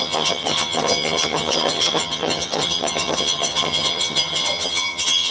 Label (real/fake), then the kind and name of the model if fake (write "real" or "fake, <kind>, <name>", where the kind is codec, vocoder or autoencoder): fake, vocoder, HiFi-GAN